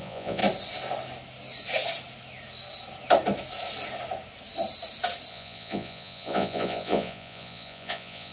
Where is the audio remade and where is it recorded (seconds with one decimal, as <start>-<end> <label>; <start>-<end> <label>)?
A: 0.0-0.4 remade; 0.4-5.3 recorded; 5.3-8.3 remade